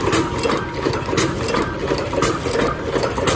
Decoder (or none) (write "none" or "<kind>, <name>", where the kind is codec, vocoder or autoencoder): none